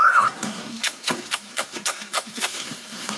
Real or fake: fake